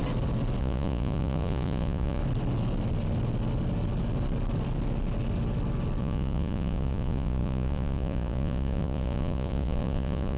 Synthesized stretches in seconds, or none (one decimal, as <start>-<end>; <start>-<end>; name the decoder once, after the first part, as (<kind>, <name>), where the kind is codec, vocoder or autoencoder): 0.6-2.2 (vocoder, Vocos); 6.0-10.4